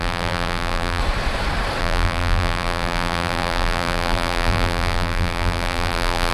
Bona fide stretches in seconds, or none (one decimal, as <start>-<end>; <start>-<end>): 1.0-1.8